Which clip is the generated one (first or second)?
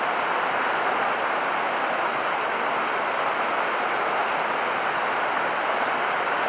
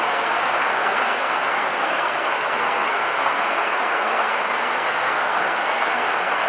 second